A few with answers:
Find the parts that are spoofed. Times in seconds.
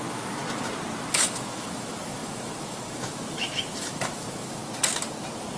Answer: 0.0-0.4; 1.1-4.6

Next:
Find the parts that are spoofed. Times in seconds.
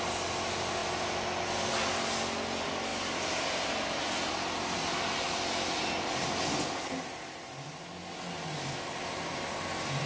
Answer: none